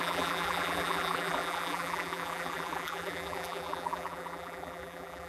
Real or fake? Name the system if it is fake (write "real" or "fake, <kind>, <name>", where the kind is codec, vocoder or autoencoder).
fake, vocoder, BigVGAN v2